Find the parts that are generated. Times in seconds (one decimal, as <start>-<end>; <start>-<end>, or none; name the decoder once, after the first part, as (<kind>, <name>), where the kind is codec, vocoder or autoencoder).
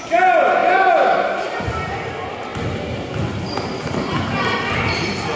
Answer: none